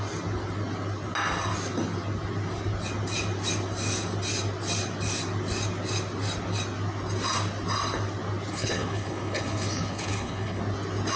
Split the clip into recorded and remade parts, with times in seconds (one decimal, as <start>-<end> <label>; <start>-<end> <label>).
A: 0.0-8.5 recorded; 8.5-10.6 remade; 10.6-11.2 recorded